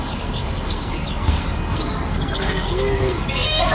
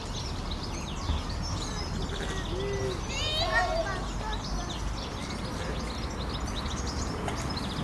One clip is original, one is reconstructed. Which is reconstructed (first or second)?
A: first